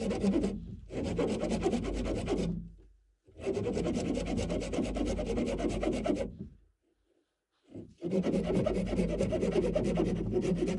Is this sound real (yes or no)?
yes